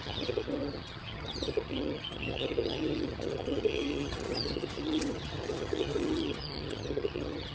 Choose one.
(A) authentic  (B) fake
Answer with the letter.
B